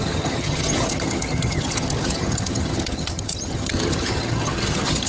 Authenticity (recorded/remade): remade